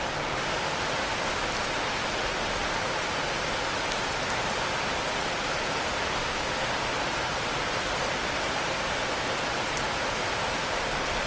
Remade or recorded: recorded